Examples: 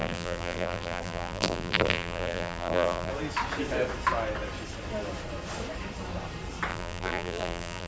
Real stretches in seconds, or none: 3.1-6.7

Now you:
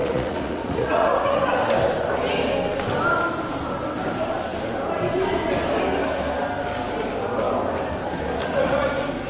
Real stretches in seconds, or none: 1.5-8.4; 8.9-9.3

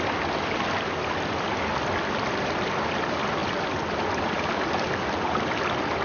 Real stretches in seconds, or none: 0.0-3.4; 4.5-6.0

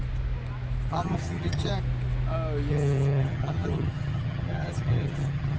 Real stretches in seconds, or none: 0.0-0.9; 1.7-2.7

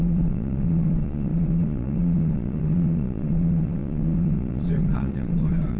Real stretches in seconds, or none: none

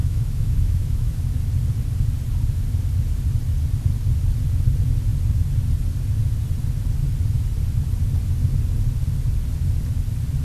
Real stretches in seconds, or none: 1.3-10.4